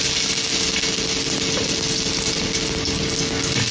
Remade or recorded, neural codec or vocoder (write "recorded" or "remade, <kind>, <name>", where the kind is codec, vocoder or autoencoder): recorded